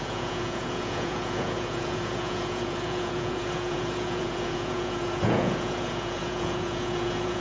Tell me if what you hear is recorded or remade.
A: remade